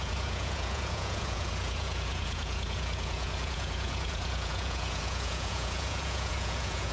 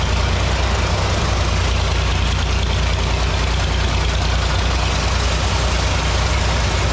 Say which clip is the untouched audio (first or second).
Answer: second